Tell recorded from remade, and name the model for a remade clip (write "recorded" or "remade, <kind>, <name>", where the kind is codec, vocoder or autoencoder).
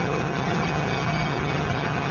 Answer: remade, vocoder, HiFi-GAN